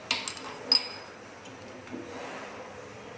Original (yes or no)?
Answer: yes